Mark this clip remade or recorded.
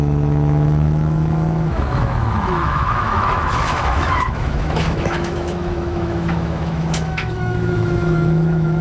remade